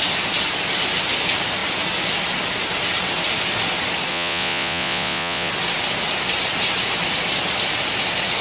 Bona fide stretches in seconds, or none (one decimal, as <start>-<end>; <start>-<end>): 0.0-4.1; 5.5-8.4

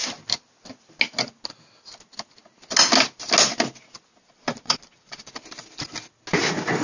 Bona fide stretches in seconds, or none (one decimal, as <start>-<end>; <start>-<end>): 0.0-4.1; 5.3-6.8